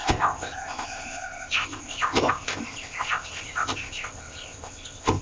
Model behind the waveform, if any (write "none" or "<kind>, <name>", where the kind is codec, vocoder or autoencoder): codec, ZipCodec